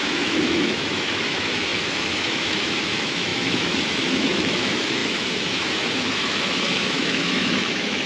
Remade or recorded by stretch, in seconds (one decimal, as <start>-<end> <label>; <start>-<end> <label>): 0.0-8.1 remade